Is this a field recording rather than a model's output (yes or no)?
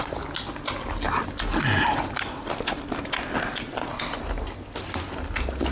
yes